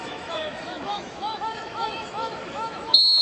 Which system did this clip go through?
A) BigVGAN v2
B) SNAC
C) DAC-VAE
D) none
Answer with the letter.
C